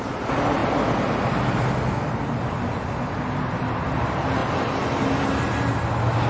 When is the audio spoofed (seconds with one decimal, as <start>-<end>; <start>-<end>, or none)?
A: none